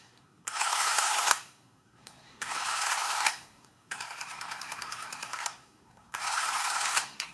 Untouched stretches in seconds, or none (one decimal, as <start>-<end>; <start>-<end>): none